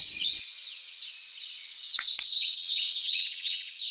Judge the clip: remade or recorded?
remade